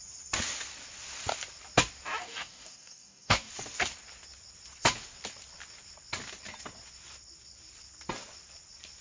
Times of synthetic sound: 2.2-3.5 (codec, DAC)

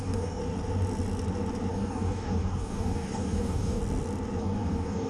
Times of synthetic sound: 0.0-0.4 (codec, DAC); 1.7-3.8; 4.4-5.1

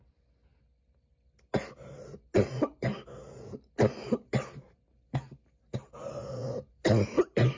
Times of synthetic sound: none

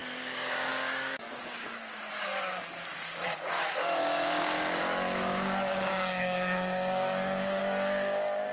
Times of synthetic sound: 0.0-8.5 (codec, DAC)

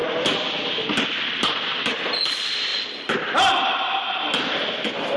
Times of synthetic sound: none